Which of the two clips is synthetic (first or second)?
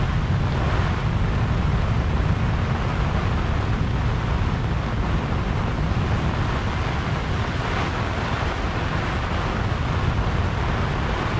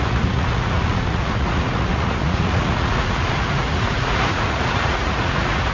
second